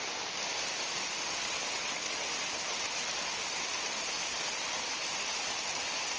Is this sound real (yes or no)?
yes